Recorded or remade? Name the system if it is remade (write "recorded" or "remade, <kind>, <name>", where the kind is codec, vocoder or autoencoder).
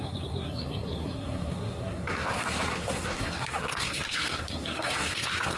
remade, codec, SNAC